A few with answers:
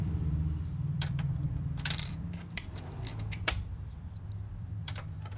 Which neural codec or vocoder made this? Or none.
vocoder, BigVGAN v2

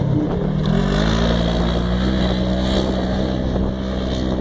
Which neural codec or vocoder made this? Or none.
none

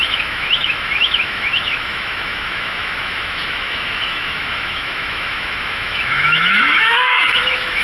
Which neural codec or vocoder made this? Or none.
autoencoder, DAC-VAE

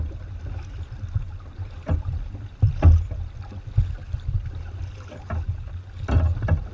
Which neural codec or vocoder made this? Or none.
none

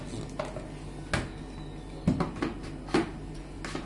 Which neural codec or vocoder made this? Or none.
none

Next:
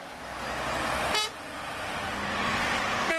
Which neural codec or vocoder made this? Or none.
none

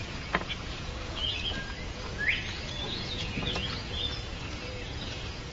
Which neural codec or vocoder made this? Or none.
vocoder, Vocos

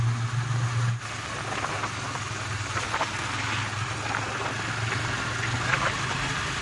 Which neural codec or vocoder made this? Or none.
none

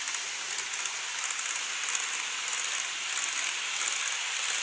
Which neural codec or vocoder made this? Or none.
none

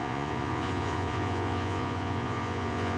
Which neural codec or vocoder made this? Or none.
vocoder, Vocos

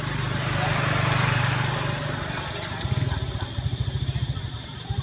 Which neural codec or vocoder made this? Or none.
none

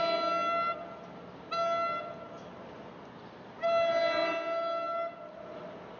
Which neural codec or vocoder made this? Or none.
none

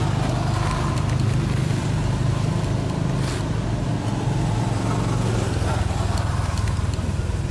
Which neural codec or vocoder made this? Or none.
none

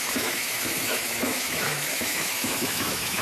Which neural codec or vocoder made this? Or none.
autoencoder, DAC-VAE